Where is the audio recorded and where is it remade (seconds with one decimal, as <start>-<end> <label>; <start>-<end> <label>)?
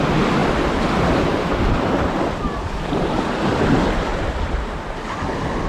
0.0-0.4 recorded; 0.4-3.1 remade; 3.1-4.1 recorded; 4.1-4.7 remade; 4.7-5.7 recorded